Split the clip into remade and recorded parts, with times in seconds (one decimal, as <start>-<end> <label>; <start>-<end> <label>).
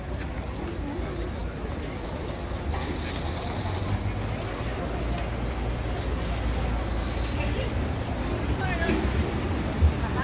0.0-10.2 recorded